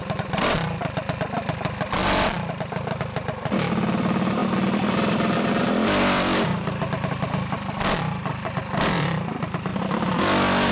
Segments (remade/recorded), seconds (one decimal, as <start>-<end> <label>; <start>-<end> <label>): 0.0-4.4 remade; 4.4-4.9 recorded; 4.9-6.5 remade; 6.5-8.3 recorded; 8.3-10.7 remade